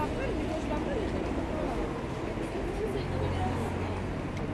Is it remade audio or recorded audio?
recorded